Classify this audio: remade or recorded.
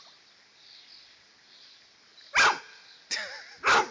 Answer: recorded